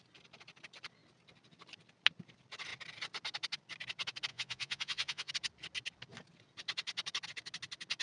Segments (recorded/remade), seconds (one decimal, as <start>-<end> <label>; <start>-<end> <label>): 0.0-4.3 recorded; 4.3-5.3 remade; 5.3-8.0 recorded